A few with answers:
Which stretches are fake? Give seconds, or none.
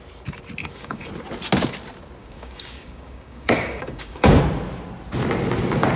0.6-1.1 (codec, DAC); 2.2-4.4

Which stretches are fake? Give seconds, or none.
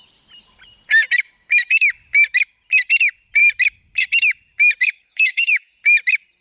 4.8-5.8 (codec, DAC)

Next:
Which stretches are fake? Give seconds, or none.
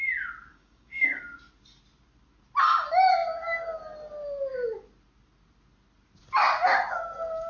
0.5-1.2 (codec, DAC)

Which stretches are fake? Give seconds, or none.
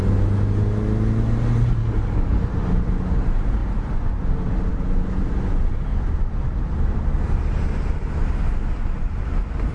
1.8-2.4 (codec, DAC)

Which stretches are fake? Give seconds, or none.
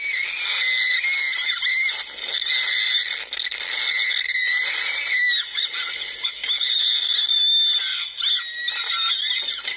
none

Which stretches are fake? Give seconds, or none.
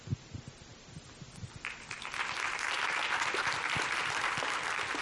none